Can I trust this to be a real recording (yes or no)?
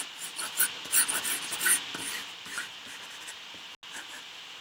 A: yes